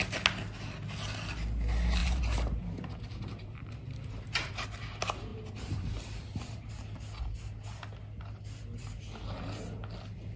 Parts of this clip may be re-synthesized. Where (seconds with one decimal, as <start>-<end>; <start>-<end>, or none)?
2.0-4.5; 5.3-6.7